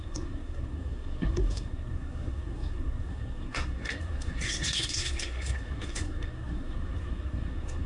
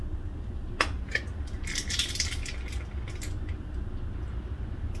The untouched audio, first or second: second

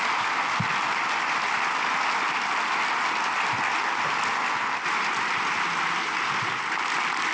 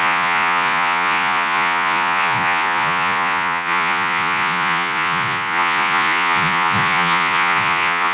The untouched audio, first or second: first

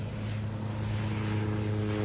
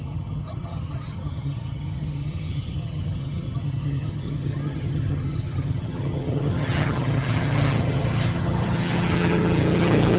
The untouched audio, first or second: first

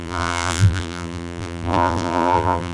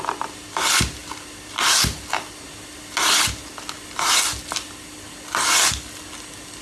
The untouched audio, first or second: second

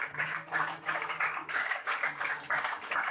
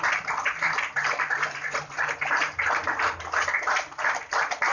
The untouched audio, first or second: second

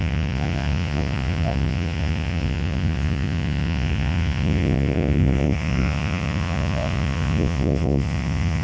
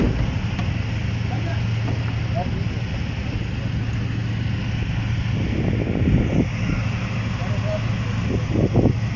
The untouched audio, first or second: second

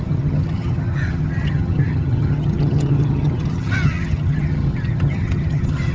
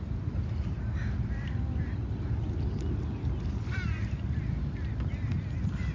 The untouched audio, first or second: second